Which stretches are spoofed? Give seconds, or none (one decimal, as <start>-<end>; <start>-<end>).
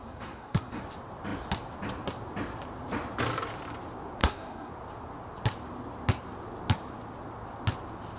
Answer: 0.0-0.8; 4.2-4.7